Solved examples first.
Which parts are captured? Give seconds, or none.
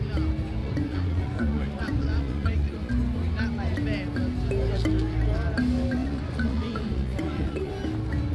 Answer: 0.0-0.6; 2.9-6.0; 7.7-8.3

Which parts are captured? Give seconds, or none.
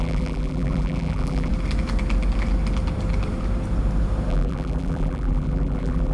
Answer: 1.5-4.3